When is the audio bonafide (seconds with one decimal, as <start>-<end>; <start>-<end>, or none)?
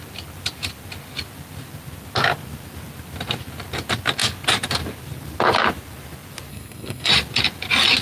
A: 0.0-6.5; 7.1-8.0